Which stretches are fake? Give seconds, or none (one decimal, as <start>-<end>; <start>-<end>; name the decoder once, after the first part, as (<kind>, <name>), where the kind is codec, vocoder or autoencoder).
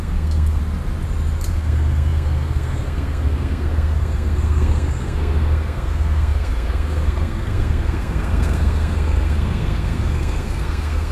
0.0-0.6 (codec, SNAC); 1.5-11.1